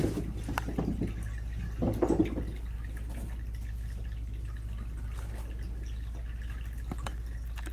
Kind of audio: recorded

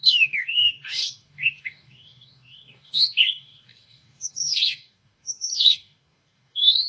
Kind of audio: remade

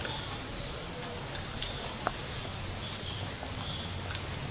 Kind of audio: recorded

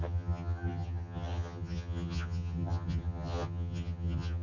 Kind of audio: remade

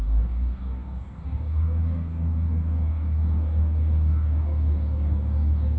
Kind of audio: remade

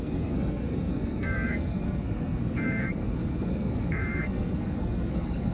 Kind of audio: remade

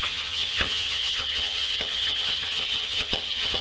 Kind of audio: remade